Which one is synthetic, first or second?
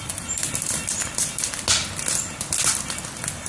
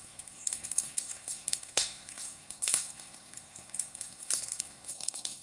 second